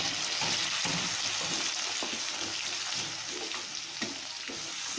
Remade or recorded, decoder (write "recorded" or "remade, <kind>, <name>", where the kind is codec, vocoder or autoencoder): recorded